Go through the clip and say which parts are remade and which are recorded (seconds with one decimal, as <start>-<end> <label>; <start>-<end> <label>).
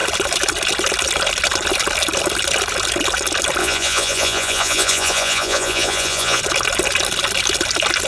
0.0-3.6 recorded; 3.6-6.4 remade; 6.4-8.1 recorded